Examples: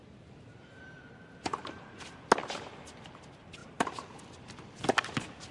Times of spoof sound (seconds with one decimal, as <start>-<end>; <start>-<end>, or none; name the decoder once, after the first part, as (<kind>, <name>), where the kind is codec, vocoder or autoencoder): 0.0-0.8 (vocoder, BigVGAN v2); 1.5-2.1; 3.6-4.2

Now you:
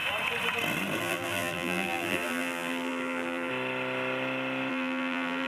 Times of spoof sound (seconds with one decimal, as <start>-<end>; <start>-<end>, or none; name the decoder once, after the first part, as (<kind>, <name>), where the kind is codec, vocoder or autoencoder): 1.0-3.5 (vocoder, BigVGAN v2); 4.7-5.5

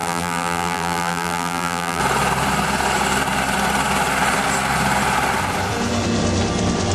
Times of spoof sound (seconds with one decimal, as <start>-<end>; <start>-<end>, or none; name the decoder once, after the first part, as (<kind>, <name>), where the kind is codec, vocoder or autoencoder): 0.0-2.0 (vocoder, BigVGAN v2)

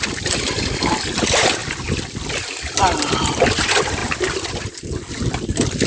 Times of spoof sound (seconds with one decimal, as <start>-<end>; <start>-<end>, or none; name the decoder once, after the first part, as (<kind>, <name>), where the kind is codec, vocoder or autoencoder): 1.6-3.2 (vocoder, BigVGAN v2)

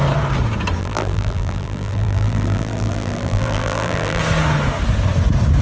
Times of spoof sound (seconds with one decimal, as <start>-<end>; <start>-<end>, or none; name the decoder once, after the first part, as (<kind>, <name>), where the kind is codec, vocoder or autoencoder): 0.8-4.2 (vocoder, BigVGAN v2)

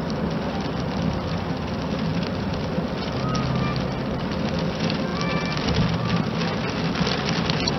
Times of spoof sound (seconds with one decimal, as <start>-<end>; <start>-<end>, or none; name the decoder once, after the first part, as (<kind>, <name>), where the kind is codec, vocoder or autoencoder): none